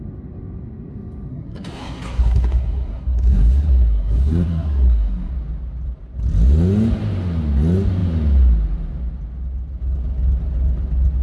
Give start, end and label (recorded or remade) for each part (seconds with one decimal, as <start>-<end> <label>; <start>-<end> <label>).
0.0-1.3 recorded; 1.3-5.3 remade; 5.3-11.2 recorded